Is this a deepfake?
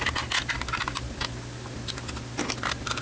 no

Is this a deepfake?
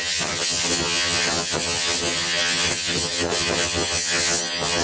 yes